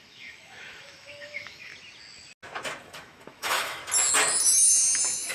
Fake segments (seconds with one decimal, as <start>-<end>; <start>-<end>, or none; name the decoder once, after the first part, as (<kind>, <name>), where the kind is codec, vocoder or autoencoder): 0.0-1.7 (autoencoder, DAC-VAE); 2.8-3.8